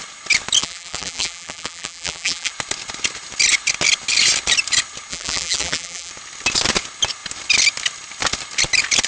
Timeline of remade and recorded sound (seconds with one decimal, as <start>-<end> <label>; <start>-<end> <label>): 0.0-0.6 recorded; 0.6-2.5 remade; 2.5-5.1 recorded; 5.1-6.1 remade; 6.1-9.1 recorded